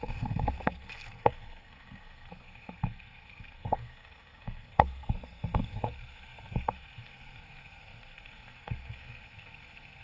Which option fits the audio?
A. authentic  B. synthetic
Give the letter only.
B